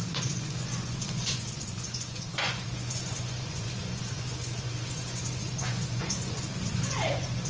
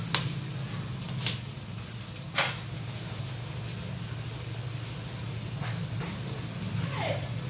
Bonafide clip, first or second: second